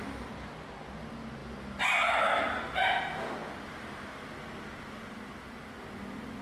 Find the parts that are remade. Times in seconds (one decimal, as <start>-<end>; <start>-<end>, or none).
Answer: none